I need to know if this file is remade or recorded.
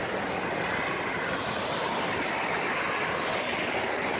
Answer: recorded